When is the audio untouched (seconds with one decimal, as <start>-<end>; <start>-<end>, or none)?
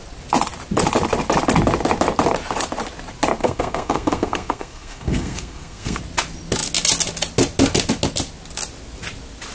0.0-3.4; 6.0-9.5